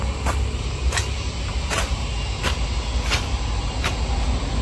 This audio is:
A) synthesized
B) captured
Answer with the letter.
B